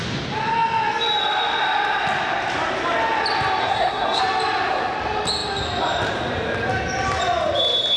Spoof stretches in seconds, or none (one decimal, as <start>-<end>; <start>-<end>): 3.6-4.2